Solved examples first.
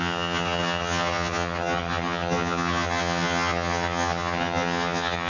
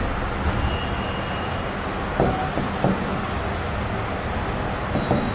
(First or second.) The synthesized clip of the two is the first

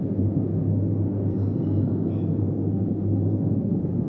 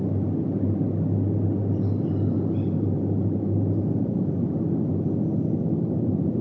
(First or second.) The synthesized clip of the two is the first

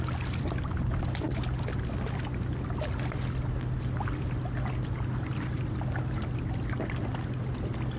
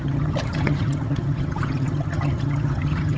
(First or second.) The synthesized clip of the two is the second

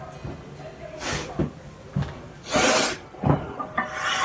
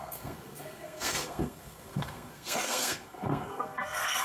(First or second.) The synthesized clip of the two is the second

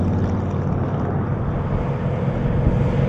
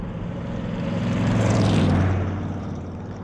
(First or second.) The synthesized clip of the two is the second